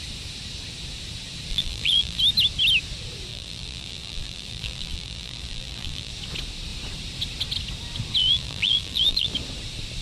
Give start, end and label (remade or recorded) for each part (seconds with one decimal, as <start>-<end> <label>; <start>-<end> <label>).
0.0-1.5 recorded; 1.5-2.2 remade; 2.2-3.3 recorded; 3.3-6.1 remade; 6.1-8.2 recorded; 8.2-9.3 remade; 9.3-10.0 recorded